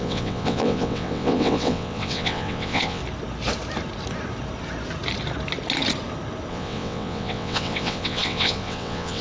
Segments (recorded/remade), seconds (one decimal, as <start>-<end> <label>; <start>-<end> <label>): 0.0-3.0 remade; 3.0-6.5 recorded; 6.5-9.2 remade